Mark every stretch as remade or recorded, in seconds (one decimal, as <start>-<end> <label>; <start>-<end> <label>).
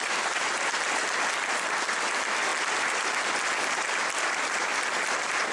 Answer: 0.0-2.5 remade; 2.5-3.7 recorded; 3.7-5.5 remade